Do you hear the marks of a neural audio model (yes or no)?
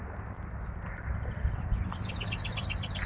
no